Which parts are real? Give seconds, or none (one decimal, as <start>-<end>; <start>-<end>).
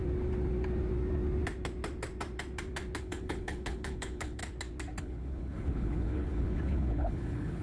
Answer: 0.0-3.0; 4.4-5.0